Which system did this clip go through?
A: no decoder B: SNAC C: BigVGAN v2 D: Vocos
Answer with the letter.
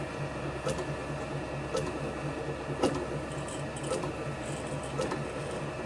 A